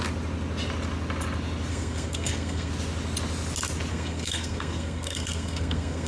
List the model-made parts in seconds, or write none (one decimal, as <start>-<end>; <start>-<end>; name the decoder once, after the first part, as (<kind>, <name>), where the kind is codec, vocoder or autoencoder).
1.7-2.7 (codec, SNAC); 3.9-6.1